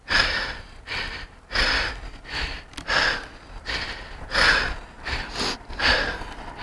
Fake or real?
real